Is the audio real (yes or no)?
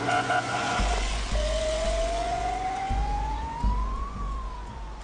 no